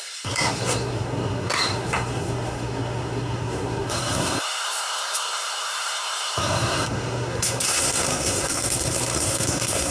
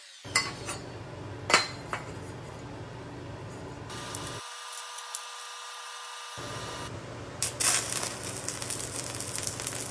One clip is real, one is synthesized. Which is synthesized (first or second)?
first